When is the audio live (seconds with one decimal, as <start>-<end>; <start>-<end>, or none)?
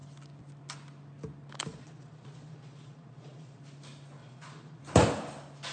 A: 0.0-1.7; 3.6-4.2; 4.8-5.7